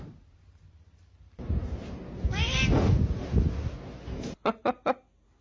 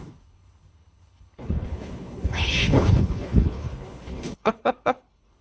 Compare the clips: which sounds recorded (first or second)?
first